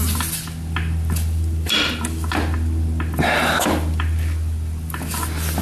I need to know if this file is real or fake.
real